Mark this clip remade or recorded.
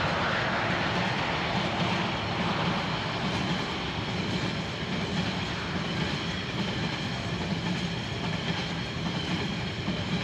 recorded